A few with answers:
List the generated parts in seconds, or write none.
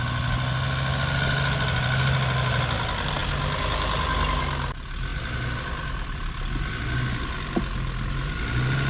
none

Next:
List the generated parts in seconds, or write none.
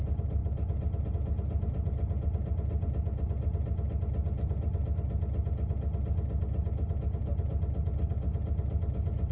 none